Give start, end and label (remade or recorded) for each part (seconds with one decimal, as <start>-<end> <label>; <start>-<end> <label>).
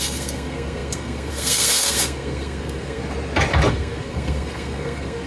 0.0-3.0 remade; 3.0-3.7 recorded; 3.7-5.3 remade